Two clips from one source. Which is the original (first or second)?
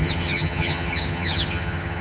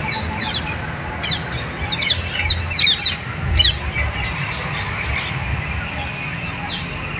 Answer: second